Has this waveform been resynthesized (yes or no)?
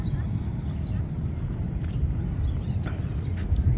no